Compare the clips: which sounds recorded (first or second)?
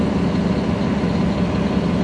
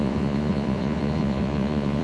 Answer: first